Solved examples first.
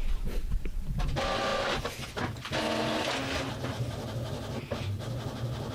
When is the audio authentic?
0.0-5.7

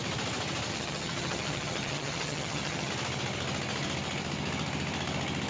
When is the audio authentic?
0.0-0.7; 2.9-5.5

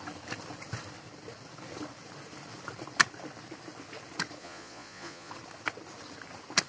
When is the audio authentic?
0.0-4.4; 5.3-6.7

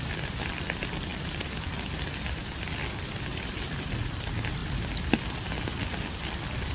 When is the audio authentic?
0.0-1.1; 2.1-2.8; 3.5-6.7

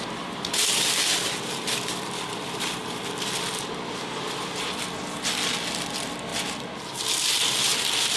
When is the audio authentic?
0.0-8.2

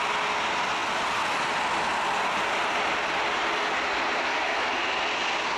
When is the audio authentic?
0.0-4.3; 4.8-5.6

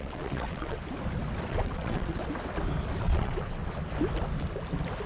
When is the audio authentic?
0.8-1.5; 2.2-3.0; 3.6-5.1

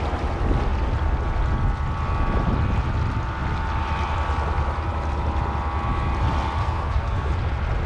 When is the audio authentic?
0.0-6.6; 7.3-7.9